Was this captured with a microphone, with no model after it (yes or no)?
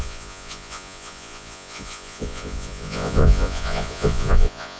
no